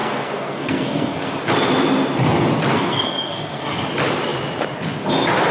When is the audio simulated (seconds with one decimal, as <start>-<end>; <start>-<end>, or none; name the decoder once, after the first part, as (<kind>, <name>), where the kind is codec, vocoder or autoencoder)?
0.0-1.4 (codec, SNAC); 2.7-3.9